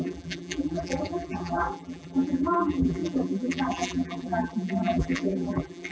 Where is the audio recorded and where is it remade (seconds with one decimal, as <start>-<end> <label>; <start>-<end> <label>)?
0.0-5.9 remade